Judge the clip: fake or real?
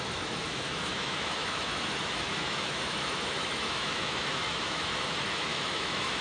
fake